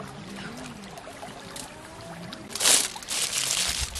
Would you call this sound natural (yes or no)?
yes